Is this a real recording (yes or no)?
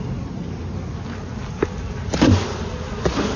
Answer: yes